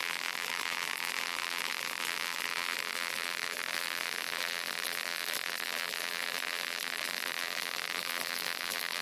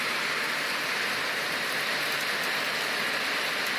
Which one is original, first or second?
second